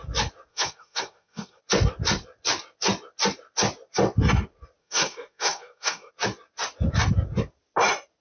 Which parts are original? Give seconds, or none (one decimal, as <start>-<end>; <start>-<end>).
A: 0.0-0.5; 1.6-4.8; 6.1-8.2